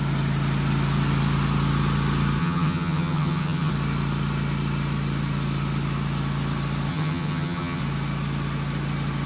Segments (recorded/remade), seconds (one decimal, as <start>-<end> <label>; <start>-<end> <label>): 0.0-2.4 recorded; 2.4-3.7 remade; 3.7-6.9 recorded; 6.9-7.8 remade; 7.8-9.3 recorded